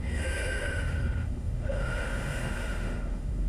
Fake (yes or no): yes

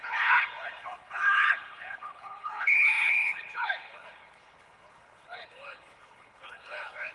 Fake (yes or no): yes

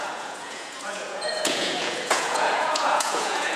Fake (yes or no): yes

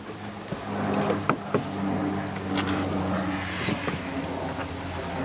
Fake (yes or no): no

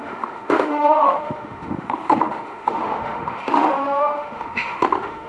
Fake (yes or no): yes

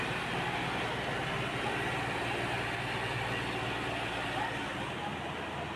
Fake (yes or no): no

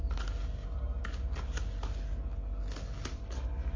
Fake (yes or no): no